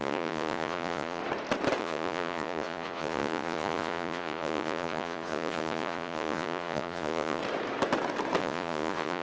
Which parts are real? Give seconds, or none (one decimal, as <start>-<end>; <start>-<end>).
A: 1.2-1.8; 7.4-8.4